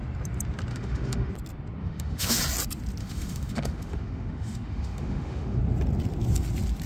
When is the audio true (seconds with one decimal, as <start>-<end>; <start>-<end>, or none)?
0.0-0.7; 1.3-1.8; 2.4-3.0; 5.6-6.9